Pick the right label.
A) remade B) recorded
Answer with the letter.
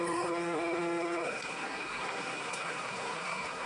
A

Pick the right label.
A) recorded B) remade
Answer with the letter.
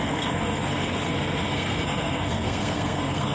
B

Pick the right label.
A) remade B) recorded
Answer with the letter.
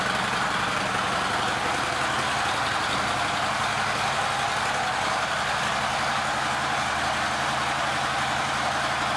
B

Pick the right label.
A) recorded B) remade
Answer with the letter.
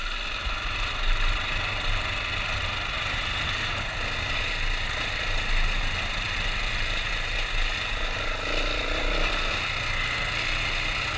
A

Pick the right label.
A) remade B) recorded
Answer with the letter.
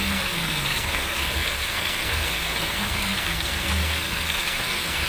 A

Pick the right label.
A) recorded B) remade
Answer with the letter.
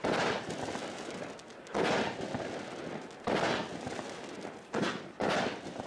A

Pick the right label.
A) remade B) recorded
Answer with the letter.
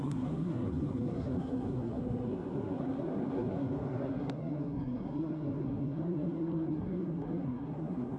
A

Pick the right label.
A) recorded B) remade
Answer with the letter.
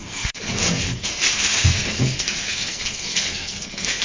B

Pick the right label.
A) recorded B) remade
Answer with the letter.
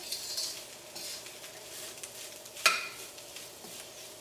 A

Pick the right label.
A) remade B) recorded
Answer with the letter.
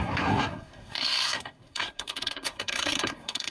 A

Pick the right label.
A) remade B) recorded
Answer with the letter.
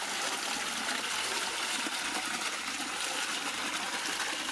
B